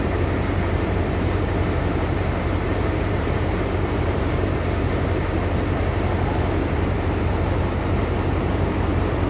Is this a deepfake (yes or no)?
yes